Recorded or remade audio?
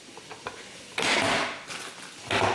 recorded